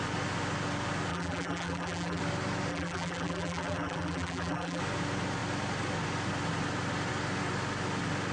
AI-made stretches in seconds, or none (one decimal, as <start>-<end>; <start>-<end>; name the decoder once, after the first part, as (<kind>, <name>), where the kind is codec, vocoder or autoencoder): 1.1-2.2 (vocoder, BigVGAN v2); 2.7-4.8